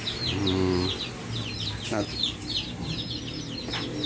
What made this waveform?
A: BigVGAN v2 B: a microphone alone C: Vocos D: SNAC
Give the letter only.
B